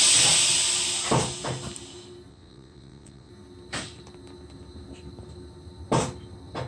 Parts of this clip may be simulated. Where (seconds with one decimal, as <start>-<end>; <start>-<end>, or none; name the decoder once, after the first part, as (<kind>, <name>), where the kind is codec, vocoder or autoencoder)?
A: 2.3-3.3 (vocoder, WaveNeXt)